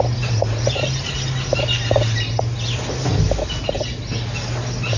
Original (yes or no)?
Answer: yes